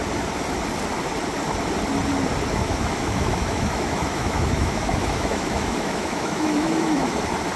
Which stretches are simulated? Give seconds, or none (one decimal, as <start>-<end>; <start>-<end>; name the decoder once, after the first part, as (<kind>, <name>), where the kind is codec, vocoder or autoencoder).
2.5-7.1 (autoencoder, DAC-VAE)